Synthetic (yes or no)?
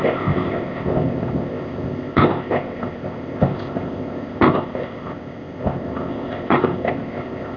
yes